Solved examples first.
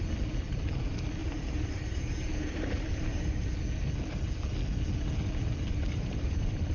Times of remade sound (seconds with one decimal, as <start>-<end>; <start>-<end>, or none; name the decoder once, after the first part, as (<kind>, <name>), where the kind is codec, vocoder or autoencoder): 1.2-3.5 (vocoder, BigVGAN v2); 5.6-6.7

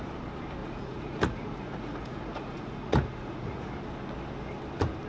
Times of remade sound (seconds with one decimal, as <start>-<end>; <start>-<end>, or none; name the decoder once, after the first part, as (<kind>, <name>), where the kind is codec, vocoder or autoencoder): 0.6-3.7 (vocoder, Vocos)

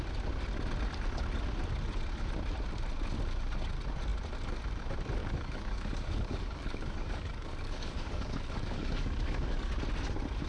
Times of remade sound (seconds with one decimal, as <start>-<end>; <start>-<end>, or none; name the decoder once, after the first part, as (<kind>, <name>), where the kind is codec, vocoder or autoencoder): 5.2-9.7 (codec, DAC)

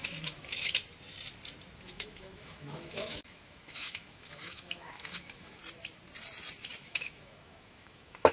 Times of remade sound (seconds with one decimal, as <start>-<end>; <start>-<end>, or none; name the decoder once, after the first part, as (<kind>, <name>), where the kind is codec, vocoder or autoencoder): 0.0-0.8 (autoencoder, DAC-VAE); 1.8-5.6; 6.8-8.3

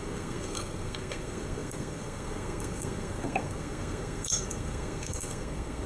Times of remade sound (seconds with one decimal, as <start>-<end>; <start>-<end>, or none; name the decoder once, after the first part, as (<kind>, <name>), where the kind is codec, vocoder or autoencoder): 0.0-5.9 (codec, SNAC)

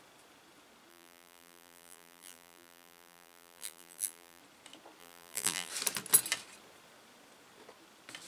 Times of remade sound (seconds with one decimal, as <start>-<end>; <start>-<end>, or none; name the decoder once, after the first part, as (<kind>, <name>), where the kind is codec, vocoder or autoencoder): 0.9-4.4 (vocoder, BigVGAN v2); 5.0-5.7

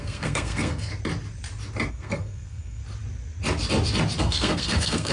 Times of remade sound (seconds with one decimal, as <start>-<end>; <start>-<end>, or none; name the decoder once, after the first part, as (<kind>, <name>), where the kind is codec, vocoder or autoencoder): 0.0-0.9 (codec, SNAC); 1.9-2.8; 4.2-5.1

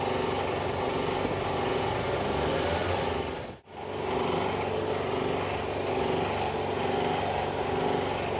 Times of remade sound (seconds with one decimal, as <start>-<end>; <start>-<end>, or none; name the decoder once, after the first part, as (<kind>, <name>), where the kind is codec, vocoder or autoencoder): 2.8-3.7 (vocoder, BigVGAN v2)